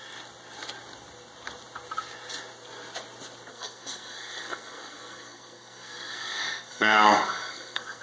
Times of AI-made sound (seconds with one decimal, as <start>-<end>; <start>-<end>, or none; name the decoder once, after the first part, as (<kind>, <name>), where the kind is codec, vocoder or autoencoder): 3.5-8.0 (codec, SNAC)